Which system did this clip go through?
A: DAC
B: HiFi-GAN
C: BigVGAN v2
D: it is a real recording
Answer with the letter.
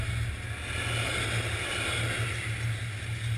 D